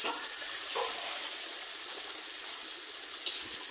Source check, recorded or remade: recorded